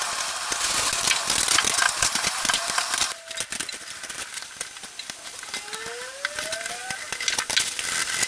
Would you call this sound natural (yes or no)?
yes